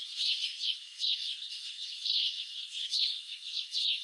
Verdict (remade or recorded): remade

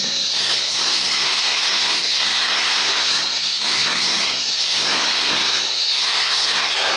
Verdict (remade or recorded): remade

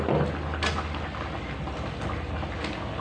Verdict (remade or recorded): recorded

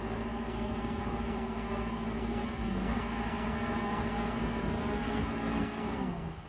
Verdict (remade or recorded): remade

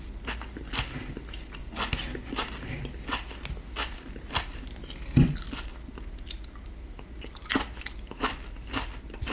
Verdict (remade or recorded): recorded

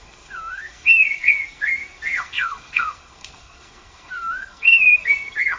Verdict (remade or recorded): remade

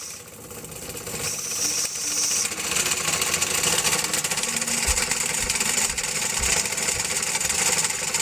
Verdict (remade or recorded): recorded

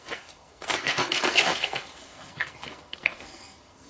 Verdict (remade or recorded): remade